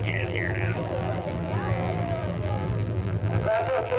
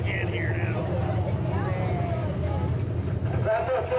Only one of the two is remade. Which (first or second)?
first